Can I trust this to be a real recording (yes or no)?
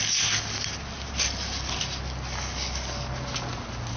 yes